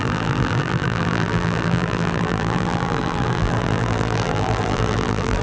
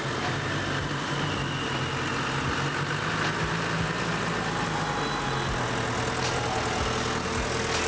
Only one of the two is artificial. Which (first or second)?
first